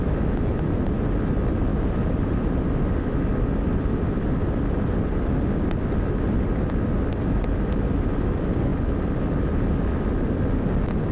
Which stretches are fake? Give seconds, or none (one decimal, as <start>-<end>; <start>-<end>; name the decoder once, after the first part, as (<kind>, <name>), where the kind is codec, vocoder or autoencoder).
1.7-4.8 (vocoder, BigVGAN v2); 8.7-9.2